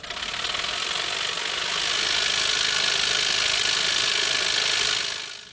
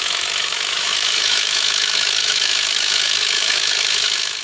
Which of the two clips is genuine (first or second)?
first